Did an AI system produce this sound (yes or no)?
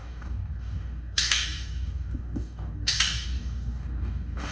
yes